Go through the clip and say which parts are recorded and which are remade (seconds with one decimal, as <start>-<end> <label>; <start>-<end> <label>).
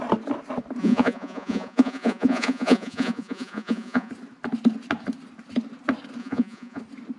0.0-0.8 recorded; 0.8-4.1 remade; 4.1-6.2 recorded; 6.2-6.8 remade; 6.8-7.2 recorded